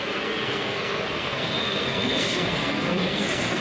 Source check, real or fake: fake